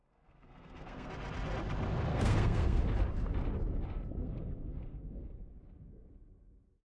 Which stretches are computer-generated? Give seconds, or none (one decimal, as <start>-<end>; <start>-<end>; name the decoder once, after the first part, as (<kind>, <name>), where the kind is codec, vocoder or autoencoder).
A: 0.0-1.1 (codec, SNAC); 2.1-2.8; 4.2-5.5